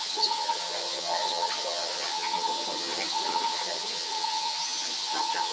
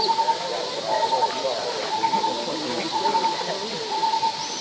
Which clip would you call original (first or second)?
second